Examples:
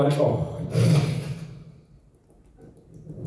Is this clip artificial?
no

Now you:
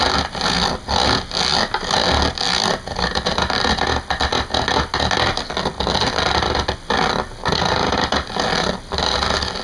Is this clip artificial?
no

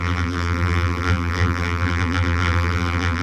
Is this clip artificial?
yes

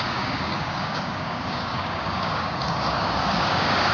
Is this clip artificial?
yes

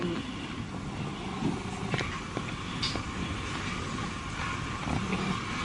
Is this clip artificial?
no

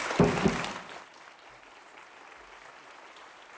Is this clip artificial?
no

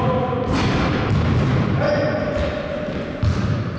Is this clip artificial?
no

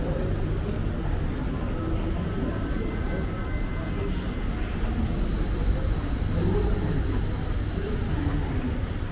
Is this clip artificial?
no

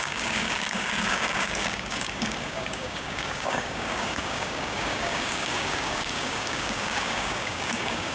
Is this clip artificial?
yes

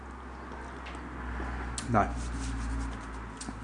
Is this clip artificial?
no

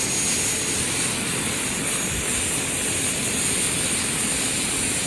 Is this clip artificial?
no